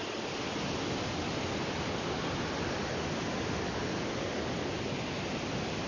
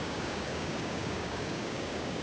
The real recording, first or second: first